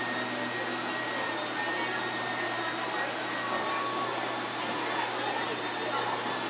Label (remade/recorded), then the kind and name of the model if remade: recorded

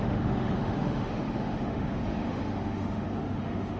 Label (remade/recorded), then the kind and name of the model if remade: remade, autoencoder, DAC-VAE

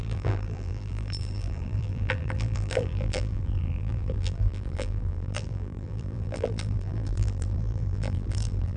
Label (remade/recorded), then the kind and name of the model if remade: remade, vocoder, BigVGAN v2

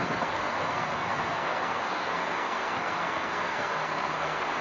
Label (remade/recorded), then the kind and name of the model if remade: remade, codec, SNAC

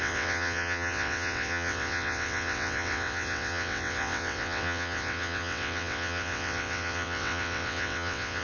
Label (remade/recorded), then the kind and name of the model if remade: remade, vocoder, WaveNeXt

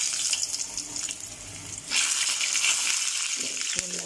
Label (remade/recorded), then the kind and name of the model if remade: recorded